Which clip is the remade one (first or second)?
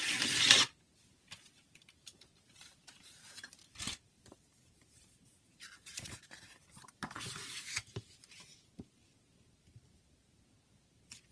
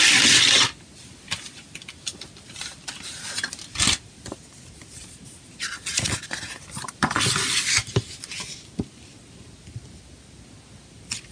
first